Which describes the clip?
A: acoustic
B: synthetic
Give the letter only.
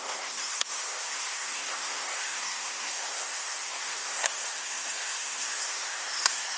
B